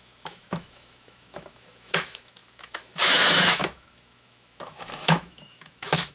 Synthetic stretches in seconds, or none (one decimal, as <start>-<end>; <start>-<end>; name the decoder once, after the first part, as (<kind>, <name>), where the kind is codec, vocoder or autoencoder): 0.0-6.1 (autoencoder, DAC-VAE)